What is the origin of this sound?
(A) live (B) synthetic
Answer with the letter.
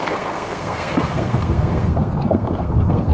B